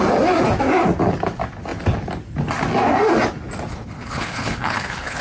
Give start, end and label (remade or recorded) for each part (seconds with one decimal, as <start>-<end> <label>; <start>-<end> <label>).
0.0-3.7 recorded; 3.7-5.2 remade